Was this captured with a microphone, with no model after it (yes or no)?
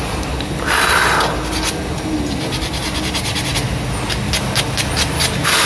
yes